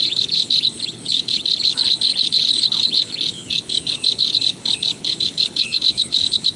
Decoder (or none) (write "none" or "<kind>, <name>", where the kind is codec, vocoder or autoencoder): codec, HILCodec